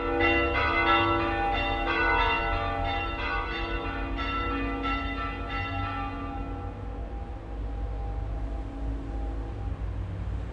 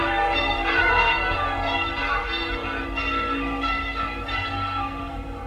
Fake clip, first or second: second